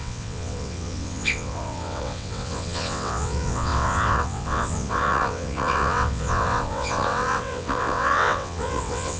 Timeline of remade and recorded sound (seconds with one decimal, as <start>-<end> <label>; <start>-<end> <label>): 0.0-9.2 remade